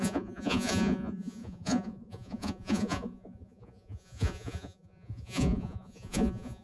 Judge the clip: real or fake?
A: fake